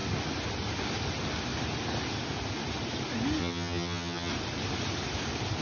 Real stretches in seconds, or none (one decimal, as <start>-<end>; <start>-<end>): 0.0-3.4; 4.3-5.6